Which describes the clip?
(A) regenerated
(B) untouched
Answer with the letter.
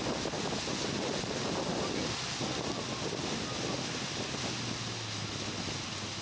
B